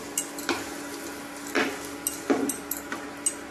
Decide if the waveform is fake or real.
real